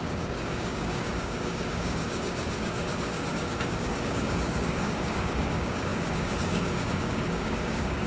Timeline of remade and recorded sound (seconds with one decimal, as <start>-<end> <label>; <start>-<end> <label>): 0.0-8.1 remade